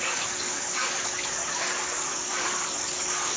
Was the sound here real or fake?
fake